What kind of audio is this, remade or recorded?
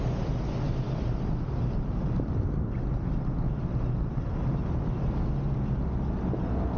recorded